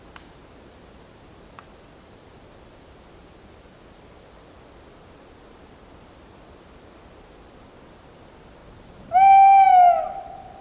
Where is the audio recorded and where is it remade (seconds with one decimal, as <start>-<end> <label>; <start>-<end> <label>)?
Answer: 0.0-10.6 recorded

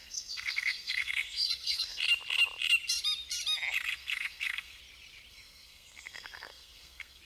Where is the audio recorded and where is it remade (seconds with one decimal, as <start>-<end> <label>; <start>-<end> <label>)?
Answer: 0.0-2.0 remade; 2.0-3.9 recorded; 3.9-4.8 remade; 4.8-5.3 recorded; 5.3-7.2 remade

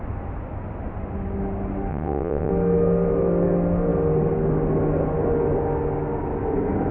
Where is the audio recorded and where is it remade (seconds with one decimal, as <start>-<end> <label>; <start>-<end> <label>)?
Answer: 0.0-1.9 recorded; 1.9-2.5 remade; 2.5-6.9 recorded

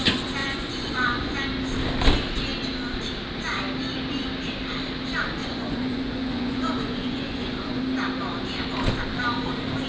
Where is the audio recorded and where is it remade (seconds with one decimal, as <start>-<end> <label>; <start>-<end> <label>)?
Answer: 0.0-0.4 recorded; 0.4-1.4 remade; 1.4-5.4 recorded; 5.4-7.8 remade; 7.8-9.9 recorded